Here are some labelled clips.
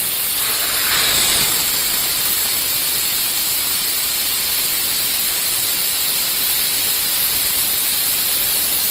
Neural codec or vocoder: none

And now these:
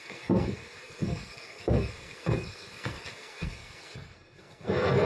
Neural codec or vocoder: codec, SNAC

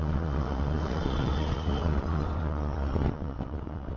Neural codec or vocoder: vocoder, WaveNeXt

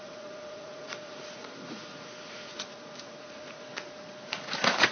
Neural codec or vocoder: vocoder, Vocos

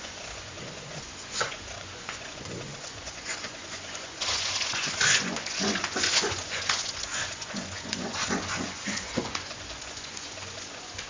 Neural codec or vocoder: vocoder, Vocos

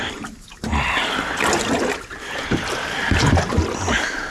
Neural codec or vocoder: none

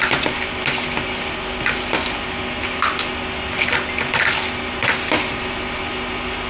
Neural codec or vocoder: none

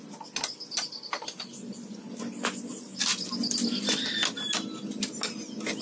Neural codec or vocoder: none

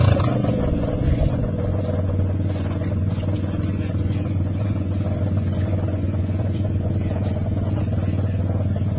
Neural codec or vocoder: vocoder, Vocos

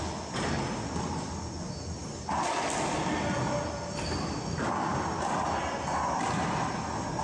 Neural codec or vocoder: none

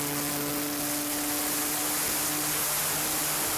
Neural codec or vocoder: none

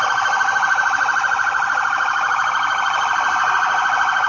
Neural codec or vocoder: none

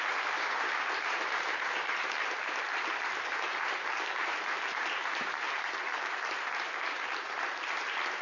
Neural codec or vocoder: vocoder, BigVGAN v2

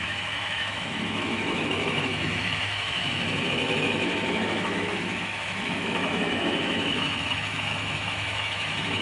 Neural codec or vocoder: autoencoder, DAC-VAE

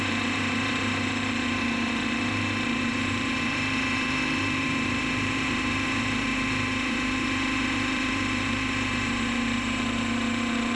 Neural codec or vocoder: vocoder, BigVGAN v2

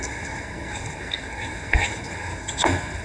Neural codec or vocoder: codec, SNAC